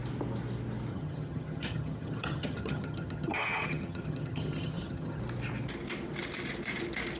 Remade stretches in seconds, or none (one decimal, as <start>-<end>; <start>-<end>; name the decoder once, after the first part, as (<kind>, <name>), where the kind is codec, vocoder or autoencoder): 0.9-5.2 (vocoder, HiFi-GAN)